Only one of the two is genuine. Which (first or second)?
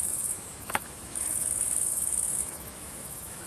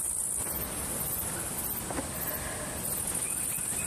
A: second